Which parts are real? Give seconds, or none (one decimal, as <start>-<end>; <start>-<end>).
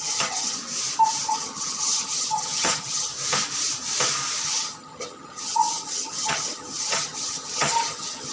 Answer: 0.6-1.3; 3.1-4.4